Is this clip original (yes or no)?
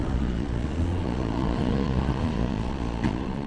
no